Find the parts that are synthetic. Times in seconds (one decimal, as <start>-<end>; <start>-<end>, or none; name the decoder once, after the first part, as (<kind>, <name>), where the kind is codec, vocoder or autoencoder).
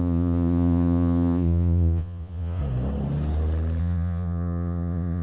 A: 0.0-2.6 (vocoder, Vocos); 3.8-5.2